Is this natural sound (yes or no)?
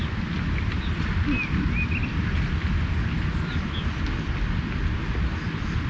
yes